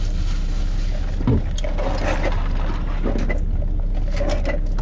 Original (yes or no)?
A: yes